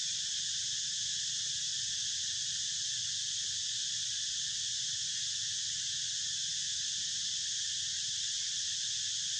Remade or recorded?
recorded